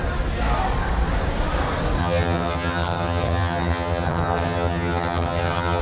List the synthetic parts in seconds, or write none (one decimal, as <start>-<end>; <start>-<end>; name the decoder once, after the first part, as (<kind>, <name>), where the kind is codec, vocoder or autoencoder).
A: 2.0-5.8 (vocoder, HiFi-GAN)